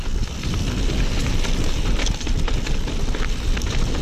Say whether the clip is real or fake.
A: real